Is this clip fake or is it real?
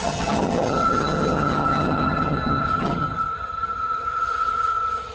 fake